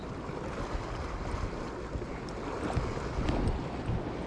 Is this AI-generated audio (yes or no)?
no